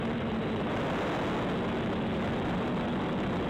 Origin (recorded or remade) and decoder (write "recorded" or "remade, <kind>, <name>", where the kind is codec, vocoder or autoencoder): recorded